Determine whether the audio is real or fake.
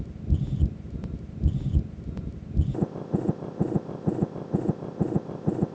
real